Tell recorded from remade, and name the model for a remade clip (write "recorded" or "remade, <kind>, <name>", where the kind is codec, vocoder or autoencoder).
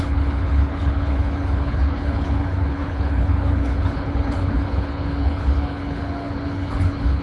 remade, codec, HILCodec